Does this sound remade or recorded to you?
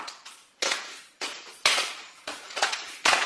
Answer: remade